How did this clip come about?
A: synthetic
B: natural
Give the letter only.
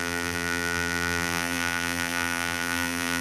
A